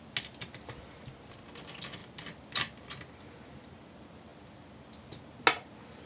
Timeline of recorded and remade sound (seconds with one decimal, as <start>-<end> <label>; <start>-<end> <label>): 0.0-6.1 recorded